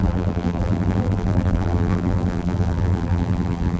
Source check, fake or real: fake